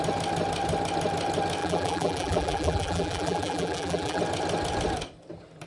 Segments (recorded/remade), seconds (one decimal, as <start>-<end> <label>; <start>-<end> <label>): 0.0-1.6 recorded; 1.6-4.2 remade; 4.2-5.7 recorded